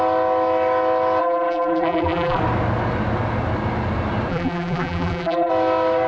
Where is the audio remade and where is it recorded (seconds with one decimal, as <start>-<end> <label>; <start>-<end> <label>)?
0.0-1.2 recorded; 1.2-2.4 remade; 2.4-4.3 recorded; 4.3-5.5 remade; 5.5-6.1 recorded